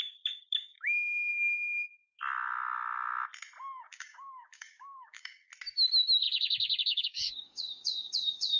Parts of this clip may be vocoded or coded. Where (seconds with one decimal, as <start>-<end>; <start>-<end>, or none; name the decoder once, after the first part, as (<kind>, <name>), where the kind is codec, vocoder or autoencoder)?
0.0-1.3 (codec, DAC); 3.8-5.5; 6.9-8.6